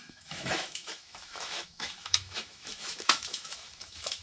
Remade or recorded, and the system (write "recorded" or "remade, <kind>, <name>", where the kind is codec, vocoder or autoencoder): remade, autoencoder, DAC-VAE